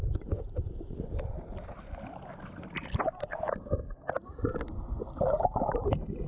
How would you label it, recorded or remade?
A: recorded